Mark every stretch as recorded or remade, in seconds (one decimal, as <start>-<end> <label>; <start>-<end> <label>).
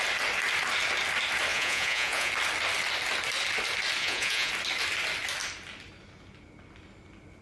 0.0-1.5 recorded; 1.5-2.3 remade; 2.3-4.0 recorded; 4.0-4.5 remade; 4.5-7.4 recorded